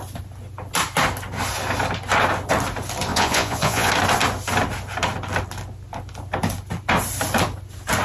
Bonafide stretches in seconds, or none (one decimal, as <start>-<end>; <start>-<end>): 0.0-3.1; 3.9-8.0